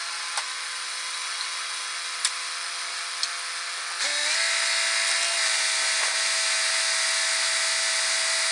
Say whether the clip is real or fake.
real